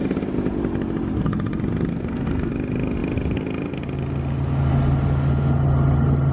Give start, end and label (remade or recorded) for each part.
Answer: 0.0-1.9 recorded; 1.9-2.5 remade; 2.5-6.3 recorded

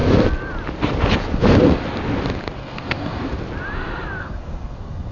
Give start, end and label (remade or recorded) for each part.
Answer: 0.0-2.6 recorded; 2.6-3.2 remade; 3.2-4.2 recorded; 4.2-5.1 remade

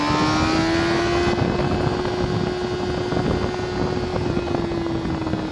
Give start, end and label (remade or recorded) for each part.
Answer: 0.0-5.5 recorded

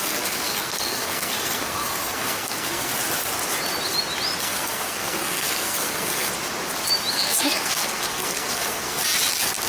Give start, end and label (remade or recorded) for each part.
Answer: 0.0-2.9 remade; 2.9-4.4 recorded; 4.4-6.3 remade; 6.3-7.1 recorded; 7.1-9.0 remade; 9.0-9.7 recorded

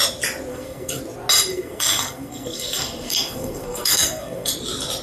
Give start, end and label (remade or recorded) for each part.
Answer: 0.0-0.5 recorded; 0.5-1.0 remade; 1.0-1.5 recorded; 1.5-4.5 remade; 4.5-5.0 recorded

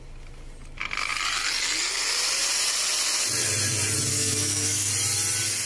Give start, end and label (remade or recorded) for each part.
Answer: 0.0-4.1 recorded; 4.1-4.9 remade; 4.9-5.7 recorded

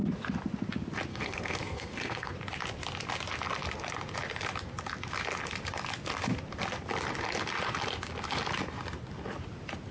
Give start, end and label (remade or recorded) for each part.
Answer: 0.0-1.1 recorded; 1.1-2.3 remade; 2.3-9.9 recorded